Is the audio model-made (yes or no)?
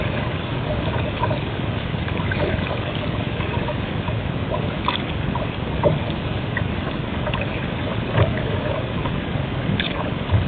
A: yes